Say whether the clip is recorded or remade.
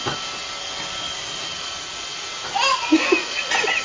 recorded